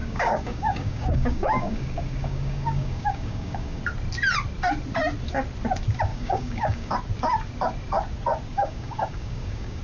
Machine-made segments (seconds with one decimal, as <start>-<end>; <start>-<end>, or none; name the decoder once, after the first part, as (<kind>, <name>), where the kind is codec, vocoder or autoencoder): 0.0-3.8 (codec, DAC); 6.1-6.9; 8.5-9.8